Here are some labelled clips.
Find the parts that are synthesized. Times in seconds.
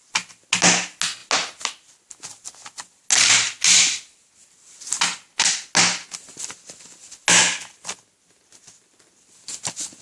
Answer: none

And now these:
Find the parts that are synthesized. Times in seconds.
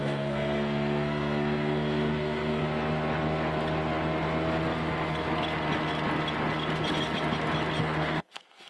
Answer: 0.0-2.6 (codec, SNAC); 7.8-8.7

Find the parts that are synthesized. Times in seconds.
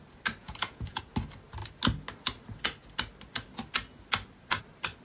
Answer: 0.4-1.0 (vocoder, Vocos)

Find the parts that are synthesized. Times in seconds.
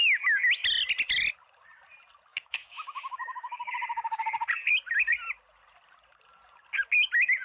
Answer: 2.3-3.7 (autoencoder, DAC-VAE)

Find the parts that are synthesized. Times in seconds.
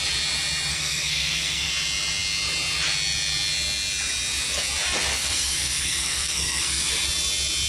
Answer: 0.7-1.7 (codec, SNAC); 5.1-6.9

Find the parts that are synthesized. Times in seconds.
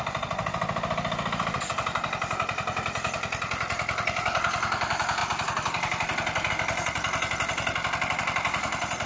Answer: 0.0-9.1 (vocoder, BigVGAN v2)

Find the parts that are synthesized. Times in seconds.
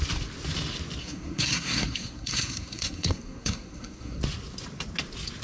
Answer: 1.0-4.2 (codec, SNAC)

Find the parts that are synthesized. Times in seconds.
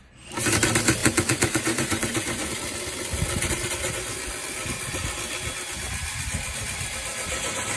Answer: 1.0-2.5 (vocoder, Vocos)